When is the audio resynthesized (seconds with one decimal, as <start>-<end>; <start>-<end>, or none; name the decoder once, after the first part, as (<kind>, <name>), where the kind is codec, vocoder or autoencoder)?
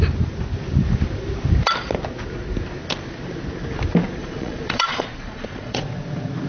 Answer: 4.2-5.8 (vocoder, Vocos)